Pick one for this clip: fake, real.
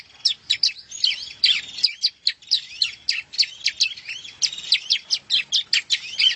real